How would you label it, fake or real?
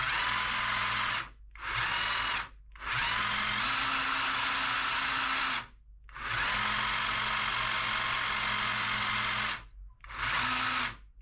real